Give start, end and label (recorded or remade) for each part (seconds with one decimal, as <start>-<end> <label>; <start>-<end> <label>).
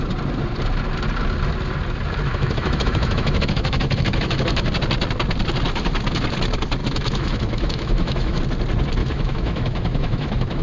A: 0.0-2.3 recorded; 2.3-4.7 remade; 4.7-6.8 recorded; 6.8-8.4 remade; 8.4-9.0 recorded; 9.0-10.6 remade